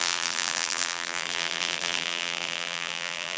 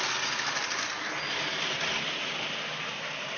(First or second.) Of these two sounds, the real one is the second